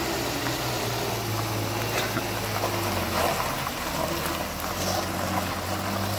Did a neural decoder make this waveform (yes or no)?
no